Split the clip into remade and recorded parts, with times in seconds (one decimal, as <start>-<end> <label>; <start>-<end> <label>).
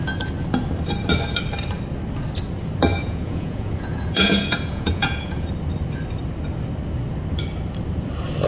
0.0-2.9 recorded; 2.9-5.5 remade; 5.5-8.5 recorded